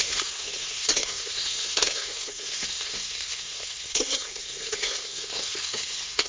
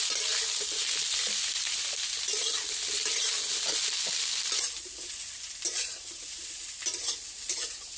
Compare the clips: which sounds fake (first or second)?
first